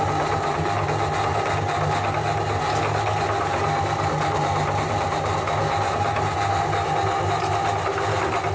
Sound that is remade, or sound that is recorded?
recorded